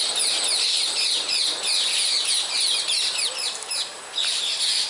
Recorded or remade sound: recorded